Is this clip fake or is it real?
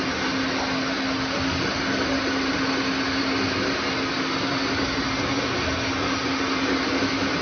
real